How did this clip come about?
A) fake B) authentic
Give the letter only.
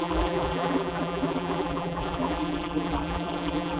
A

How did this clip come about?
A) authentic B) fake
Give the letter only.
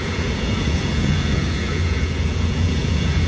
B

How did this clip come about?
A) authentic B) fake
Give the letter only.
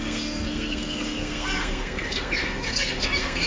B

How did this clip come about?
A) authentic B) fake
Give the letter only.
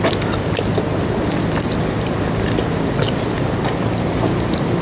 A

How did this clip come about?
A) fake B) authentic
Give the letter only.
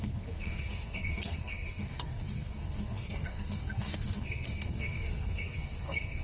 A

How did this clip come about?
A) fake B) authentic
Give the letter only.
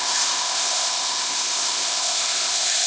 A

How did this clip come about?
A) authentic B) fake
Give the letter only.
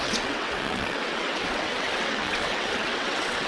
B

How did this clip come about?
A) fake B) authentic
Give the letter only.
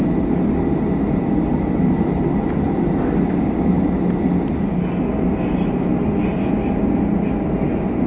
B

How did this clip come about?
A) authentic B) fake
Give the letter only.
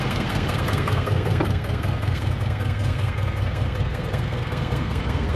B